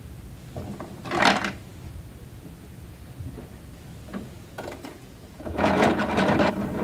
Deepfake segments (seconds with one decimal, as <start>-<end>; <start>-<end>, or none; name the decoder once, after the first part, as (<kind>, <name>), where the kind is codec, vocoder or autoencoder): 4.1-5.9 (vocoder, Vocos)